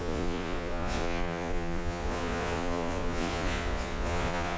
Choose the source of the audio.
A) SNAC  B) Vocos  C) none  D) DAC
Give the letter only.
B